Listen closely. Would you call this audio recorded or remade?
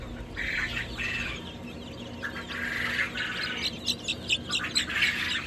recorded